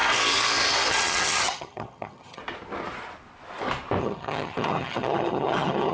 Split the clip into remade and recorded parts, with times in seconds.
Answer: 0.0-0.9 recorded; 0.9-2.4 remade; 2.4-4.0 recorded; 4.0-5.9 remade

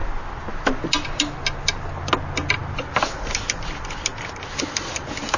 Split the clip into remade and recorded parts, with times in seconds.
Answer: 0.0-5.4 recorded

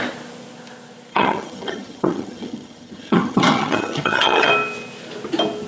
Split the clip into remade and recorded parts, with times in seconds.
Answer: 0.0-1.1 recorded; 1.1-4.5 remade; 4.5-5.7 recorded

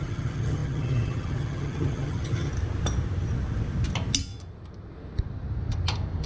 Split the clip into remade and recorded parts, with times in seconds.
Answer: 0.0-2.5 remade; 2.5-6.3 recorded

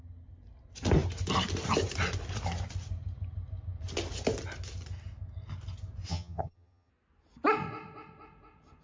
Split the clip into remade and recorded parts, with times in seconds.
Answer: 0.0-6.1 recorded; 6.1-6.9 remade; 6.9-8.8 recorded

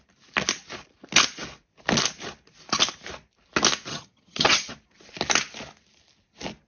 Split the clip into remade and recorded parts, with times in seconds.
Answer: 0.0-3.9 recorded; 3.9-4.7 remade; 4.7-6.7 recorded

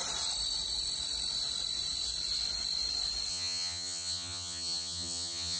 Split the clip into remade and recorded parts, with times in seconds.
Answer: 0.0-3.3 recorded; 3.3-5.6 remade